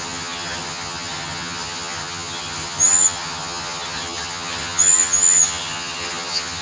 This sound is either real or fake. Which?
fake